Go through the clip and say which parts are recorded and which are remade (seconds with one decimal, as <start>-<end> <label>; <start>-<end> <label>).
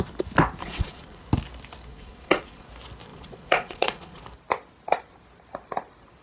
0.0-0.6 recorded; 0.6-1.2 remade; 1.2-1.9 recorded; 1.9-2.7 remade; 2.7-3.1 recorded; 3.1-4.2 remade; 4.2-6.2 recorded